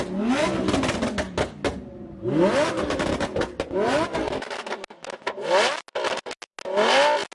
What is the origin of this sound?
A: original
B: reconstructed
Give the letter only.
A